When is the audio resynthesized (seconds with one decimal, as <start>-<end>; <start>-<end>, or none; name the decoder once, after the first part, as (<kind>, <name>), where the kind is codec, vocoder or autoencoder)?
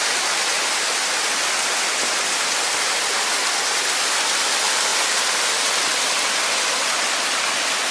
none